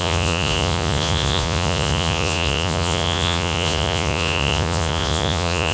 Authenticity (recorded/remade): remade